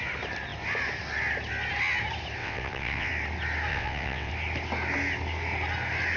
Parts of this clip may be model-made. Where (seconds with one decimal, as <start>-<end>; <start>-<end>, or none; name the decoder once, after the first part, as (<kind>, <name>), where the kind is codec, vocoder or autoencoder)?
2.4-3.1 (vocoder, WaveNeXt); 3.7-4.3